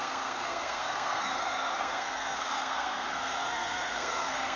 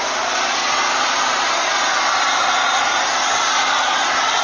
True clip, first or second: second